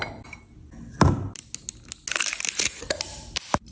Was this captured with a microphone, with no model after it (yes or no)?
yes